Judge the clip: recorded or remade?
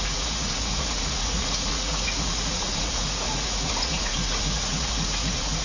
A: remade